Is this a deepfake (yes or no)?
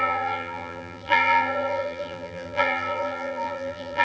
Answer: yes